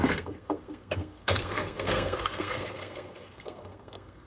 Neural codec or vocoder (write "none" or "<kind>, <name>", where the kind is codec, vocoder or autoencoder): codec, SNAC